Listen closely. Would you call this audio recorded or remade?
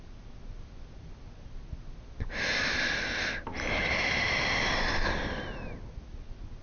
recorded